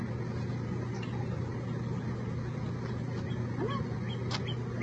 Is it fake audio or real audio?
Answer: real